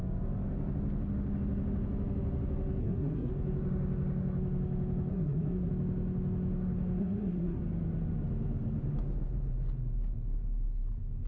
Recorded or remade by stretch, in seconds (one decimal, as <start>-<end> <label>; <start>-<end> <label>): 0.0-2.8 recorded; 2.8-3.3 remade; 3.3-5.1 recorded; 5.1-5.7 remade; 5.7-7.0 recorded; 7.0-7.6 remade; 7.6-11.3 recorded